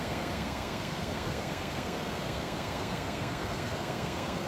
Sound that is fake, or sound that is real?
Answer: fake